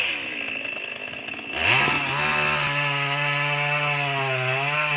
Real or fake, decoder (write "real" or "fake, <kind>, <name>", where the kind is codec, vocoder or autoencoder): real